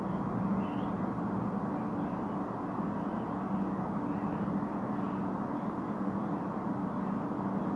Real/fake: real